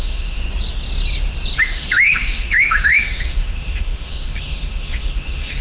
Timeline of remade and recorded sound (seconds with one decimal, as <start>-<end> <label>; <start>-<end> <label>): 0.0-0.4 remade; 0.4-1.6 recorded; 1.6-5.6 remade